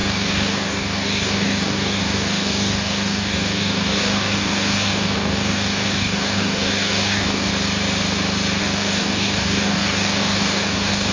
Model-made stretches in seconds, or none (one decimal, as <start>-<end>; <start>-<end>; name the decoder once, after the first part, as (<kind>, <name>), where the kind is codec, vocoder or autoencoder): 0.0-7.5 (codec, DAC); 8.6-11.1